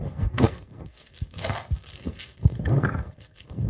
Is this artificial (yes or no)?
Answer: yes